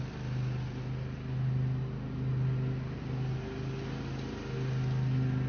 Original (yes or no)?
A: yes